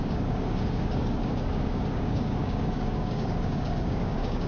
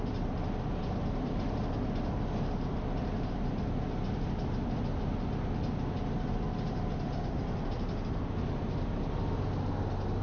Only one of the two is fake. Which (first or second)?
first